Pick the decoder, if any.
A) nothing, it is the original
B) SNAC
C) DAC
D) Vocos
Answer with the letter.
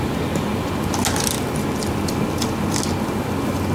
A